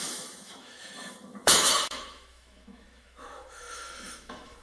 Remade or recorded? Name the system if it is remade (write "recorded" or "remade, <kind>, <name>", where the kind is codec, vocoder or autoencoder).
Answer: remade, autoencoder, DAC-VAE